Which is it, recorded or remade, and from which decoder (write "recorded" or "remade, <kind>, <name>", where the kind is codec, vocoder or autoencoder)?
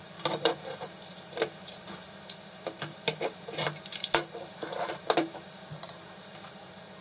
remade, vocoder, BigVGAN v2